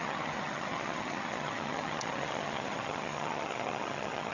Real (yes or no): no